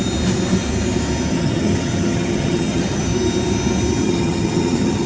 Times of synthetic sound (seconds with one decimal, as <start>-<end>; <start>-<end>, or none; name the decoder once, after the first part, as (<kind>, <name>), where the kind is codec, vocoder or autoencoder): 1.3-3.1 (vocoder, HiFi-GAN); 4.0-5.1